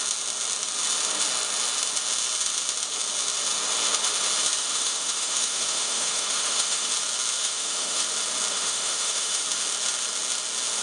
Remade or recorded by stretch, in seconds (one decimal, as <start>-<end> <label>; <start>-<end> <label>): 0.0-4.6 recorded; 4.6-6.9 remade; 6.9-7.4 recorded; 7.4-8.0 remade; 8.0-8.5 recorded; 8.5-9.4 remade; 9.4-10.8 recorded